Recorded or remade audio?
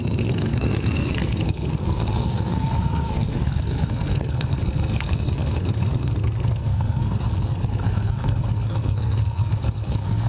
remade